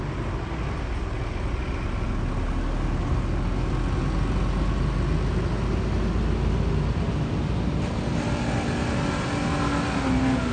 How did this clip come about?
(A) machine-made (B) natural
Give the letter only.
B